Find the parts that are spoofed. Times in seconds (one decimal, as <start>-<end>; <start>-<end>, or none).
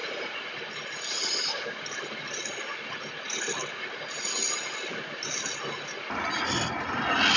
none